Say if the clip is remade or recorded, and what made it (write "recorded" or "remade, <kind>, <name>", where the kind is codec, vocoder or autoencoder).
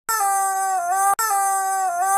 recorded